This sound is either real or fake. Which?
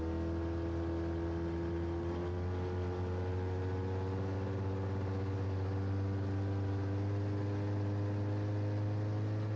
real